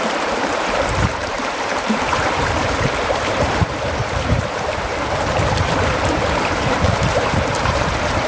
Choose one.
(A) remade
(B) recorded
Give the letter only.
A